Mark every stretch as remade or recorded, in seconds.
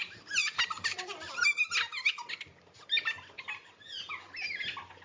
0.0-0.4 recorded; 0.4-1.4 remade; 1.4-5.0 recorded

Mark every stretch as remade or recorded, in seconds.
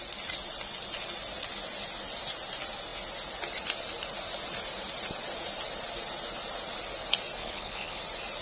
0.0-7.4 recorded; 7.4-8.0 remade; 8.0-8.4 recorded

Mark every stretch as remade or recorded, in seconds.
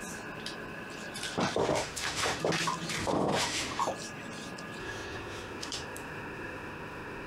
0.0-1.6 recorded; 1.6-2.4 remade; 2.4-3.0 recorded; 3.0-3.8 remade; 3.8-4.8 recorded; 4.8-7.3 remade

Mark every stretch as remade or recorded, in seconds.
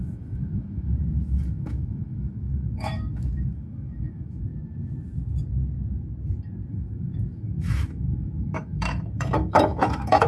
0.0-4.5 remade; 4.5-6.7 recorded; 6.7-10.3 remade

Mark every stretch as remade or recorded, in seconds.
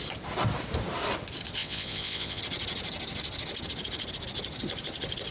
0.0-1.6 recorded; 1.6-2.4 remade; 2.4-5.3 recorded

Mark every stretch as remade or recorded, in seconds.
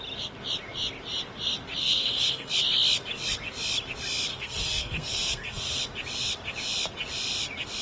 0.0-1.8 recorded; 1.8-2.5 remade; 2.5-4.3 recorded; 4.3-5.8 remade; 5.8-7.8 recorded